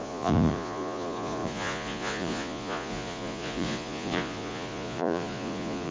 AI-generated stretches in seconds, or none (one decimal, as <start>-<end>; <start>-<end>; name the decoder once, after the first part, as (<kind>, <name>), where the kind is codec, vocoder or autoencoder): 0.0-5.9 (vocoder, Vocos)